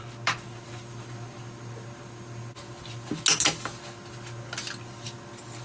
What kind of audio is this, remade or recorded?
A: recorded